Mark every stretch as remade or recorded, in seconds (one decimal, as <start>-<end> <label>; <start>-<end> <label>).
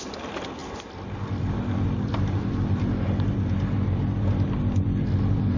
0.0-5.6 recorded